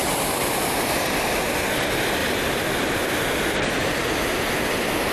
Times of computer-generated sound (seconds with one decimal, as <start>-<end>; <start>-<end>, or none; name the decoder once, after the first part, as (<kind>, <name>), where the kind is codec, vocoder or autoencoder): none